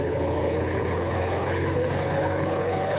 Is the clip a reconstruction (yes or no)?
yes